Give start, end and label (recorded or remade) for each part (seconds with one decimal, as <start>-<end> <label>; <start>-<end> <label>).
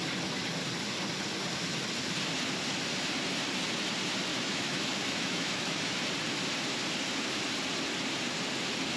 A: 0.0-4.3 recorded; 4.3-6.0 remade; 6.0-9.0 recorded